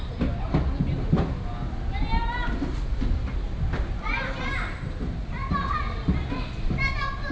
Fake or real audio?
real